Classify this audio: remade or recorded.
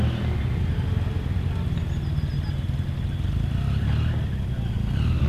recorded